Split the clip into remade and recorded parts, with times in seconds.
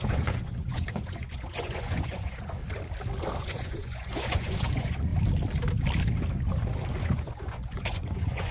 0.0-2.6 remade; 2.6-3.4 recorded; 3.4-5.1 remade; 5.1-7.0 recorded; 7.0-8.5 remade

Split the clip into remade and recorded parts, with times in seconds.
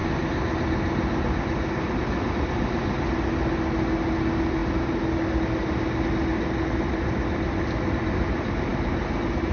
0.0-9.5 recorded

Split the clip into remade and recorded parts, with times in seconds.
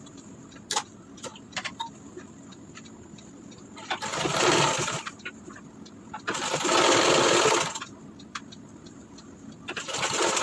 0.0-4.1 remade; 4.1-9.0 recorded; 9.0-10.4 remade